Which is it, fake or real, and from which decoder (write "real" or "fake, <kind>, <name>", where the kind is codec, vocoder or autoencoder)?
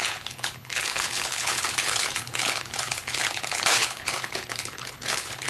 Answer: fake, codec, HILCodec